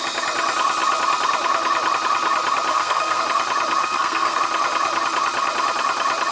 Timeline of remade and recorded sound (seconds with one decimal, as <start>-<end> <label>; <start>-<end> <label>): 0.0-2.7 recorded; 2.7-3.2 remade; 3.2-3.8 recorded; 3.8-4.4 remade; 4.4-6.3 recorded